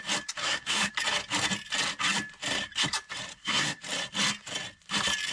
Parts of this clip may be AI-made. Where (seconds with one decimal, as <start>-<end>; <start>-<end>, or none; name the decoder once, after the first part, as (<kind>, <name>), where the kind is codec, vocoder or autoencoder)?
0.4-0.9 (codec, SNAC); 3.3-3.8